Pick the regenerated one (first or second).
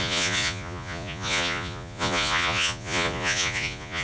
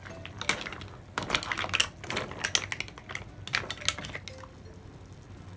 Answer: first